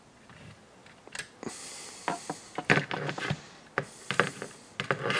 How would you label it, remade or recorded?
recorded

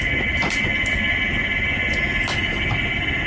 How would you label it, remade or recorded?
recorded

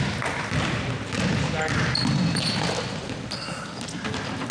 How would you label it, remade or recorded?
recorded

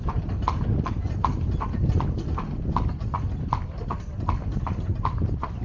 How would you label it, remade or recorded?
recorded